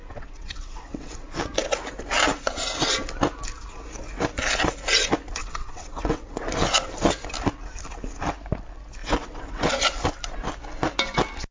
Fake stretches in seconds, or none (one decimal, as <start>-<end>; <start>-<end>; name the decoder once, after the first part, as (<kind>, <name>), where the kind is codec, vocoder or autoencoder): 0.0-1.1 (vocoder, WaveNeXt); 5.4-6.5; 9.0-9.7